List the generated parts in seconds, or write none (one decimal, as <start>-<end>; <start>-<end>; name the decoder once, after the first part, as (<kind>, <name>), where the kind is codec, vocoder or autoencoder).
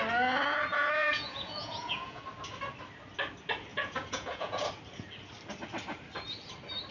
0.7-2.2 (vocoder, Vocos); 3.7-4.7